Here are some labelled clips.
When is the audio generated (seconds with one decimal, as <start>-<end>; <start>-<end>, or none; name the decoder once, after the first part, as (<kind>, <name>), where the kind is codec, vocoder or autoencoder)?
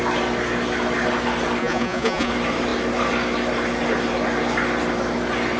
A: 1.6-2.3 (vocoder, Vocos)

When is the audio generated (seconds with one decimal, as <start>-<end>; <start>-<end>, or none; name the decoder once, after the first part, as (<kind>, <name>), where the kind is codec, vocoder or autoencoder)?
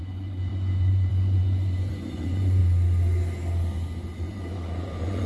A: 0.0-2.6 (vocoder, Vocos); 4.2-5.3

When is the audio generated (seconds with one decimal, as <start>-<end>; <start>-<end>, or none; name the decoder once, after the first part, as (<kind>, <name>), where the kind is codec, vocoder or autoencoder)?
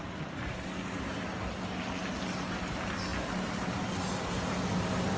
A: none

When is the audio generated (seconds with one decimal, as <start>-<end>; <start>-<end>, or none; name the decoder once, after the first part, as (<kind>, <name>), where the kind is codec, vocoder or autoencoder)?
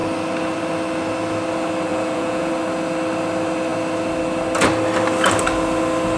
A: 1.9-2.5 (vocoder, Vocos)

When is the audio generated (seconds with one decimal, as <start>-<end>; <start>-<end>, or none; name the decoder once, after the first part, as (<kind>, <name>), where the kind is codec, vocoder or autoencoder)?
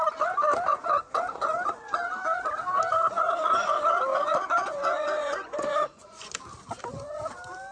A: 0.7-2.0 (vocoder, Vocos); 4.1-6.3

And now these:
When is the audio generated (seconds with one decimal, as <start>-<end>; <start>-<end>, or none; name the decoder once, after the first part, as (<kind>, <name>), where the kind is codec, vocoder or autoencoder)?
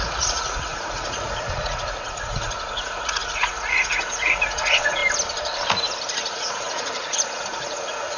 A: 0.0-5.0 (vocoder, Vocos); 6.3-8.2